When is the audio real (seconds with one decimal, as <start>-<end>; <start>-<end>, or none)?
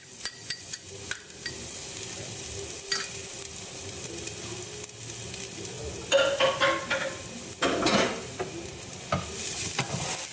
0.0-0.4; 0.9-10.3